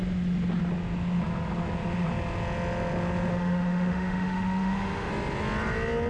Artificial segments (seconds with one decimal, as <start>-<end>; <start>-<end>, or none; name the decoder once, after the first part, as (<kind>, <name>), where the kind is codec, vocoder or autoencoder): 3.3-5.1 (autoencoder, DAC-VAE)